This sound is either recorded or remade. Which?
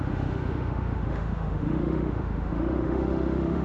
remade